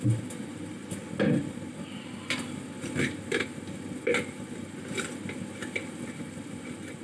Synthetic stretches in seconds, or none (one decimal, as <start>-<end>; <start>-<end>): none